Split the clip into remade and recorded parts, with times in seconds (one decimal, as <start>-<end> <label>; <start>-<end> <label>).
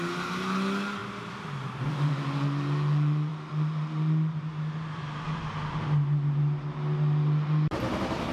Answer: 0.0-8.3 recorded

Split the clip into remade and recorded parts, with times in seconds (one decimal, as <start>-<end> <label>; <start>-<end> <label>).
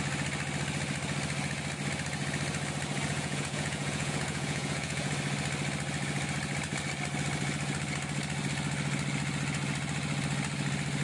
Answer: 0.0-3.1 recorded; 3.1-5.1 remade; 5.1-11.0 recorded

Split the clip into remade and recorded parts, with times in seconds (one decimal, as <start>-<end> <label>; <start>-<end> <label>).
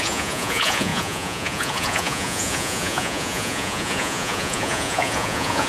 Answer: 0.0-5.7 remade